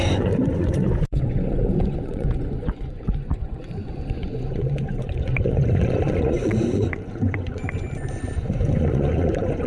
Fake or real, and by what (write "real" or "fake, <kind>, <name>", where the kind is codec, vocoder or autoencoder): fake, vocoder, Vocos